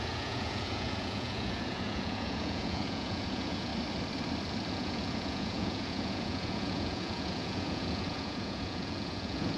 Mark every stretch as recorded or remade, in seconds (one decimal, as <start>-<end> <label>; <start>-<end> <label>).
0.0-3.7 remade; 3.7-4.7 recorded; 4.7-9.6 remade